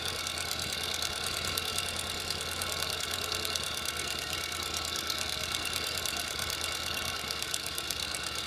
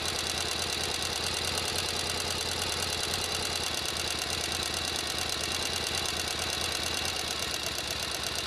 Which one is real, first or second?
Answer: second